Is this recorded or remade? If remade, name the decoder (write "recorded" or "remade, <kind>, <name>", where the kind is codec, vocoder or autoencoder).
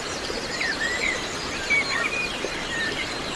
remade, vocoder, BigVGAN v2